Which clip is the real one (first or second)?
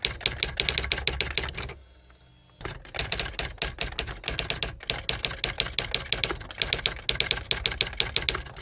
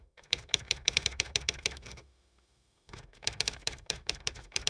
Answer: first